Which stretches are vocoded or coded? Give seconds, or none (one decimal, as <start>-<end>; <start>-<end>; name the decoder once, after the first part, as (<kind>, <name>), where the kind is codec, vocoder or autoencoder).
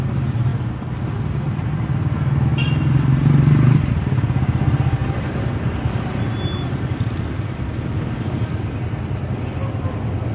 0.5-1.0 (vocoder, BigVGAN v2); 2.5-3.9; 5.0-8.1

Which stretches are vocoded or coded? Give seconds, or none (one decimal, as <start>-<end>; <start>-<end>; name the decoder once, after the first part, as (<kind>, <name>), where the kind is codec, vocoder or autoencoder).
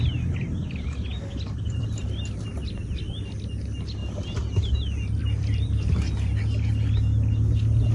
1.1-2.0 (vocoder, BigVGAN v2); 5.2-6.4